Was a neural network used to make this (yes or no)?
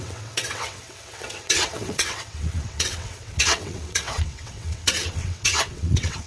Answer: yes